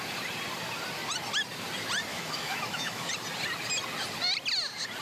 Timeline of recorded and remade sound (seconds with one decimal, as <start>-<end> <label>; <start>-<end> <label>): 0.0-2.1 recorded; 2.1-3.1 remade; 3.1-5.0 recorded